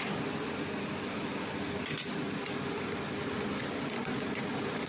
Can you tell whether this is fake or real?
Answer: real